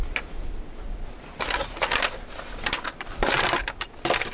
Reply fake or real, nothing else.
real